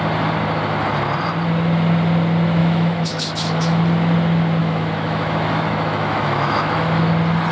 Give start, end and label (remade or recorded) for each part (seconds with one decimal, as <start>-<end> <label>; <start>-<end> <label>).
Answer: 0.0-2.6 recorded; 2.6-3.8 remade; 3.8-4.6 recorded; 4.6-7.0 remade; 7.0-7.5 recorded